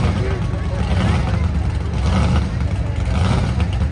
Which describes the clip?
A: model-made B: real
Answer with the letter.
B